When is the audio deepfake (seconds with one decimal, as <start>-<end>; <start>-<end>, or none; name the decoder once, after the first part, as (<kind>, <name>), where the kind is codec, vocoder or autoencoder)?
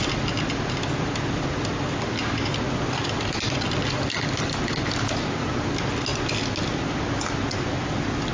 none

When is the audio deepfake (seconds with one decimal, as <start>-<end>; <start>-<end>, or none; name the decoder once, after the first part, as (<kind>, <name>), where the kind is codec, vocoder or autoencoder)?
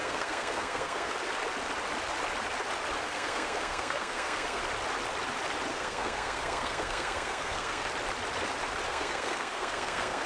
0.0-1.1 (codec, SNAC); 3.0-4.6; 5.7-7.9; 8.9-10.3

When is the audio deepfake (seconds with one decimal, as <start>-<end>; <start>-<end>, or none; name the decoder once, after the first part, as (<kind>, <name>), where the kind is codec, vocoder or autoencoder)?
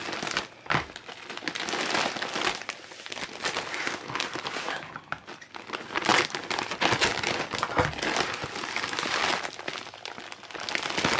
none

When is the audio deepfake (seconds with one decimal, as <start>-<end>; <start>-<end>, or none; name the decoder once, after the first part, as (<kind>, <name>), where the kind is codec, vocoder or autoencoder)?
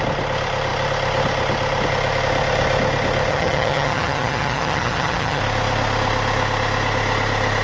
3.3-5.4 (vocoder, HiFi-GAN)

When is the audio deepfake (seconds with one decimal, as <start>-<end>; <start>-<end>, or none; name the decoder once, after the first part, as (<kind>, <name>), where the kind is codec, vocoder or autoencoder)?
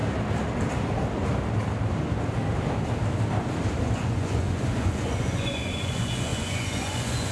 3.8-7.3 (vocoder, Vocos)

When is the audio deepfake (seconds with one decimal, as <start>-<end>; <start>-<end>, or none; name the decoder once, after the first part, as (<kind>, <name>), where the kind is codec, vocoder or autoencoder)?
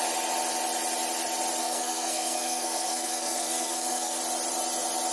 1.6-4.2 (codec, SNAC)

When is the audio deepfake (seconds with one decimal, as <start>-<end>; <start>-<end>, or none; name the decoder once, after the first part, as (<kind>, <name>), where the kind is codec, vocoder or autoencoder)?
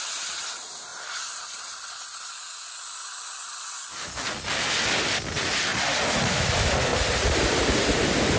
none